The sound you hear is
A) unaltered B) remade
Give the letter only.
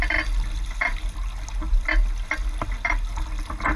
A